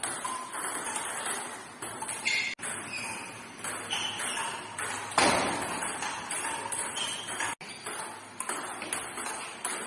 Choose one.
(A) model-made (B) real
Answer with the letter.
B